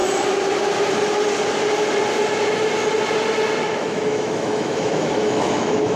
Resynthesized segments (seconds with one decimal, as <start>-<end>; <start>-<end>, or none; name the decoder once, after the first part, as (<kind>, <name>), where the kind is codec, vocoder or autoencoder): 3.6-6.0 (autoencoder, DAC-VAE)